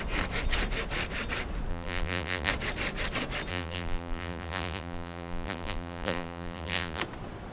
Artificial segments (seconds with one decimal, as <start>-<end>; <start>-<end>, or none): 1.7-2.5; 3.5-7.0